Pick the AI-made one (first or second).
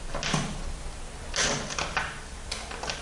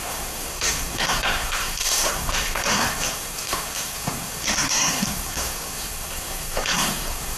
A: second